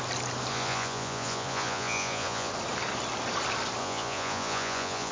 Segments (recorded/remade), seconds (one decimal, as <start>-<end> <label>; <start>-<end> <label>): 0.0-0.5 recorded; 0.5-2.5 remade; 2.5-3.8 recorded; 3.8-5.1 remade